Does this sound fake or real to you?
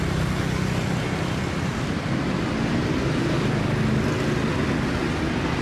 real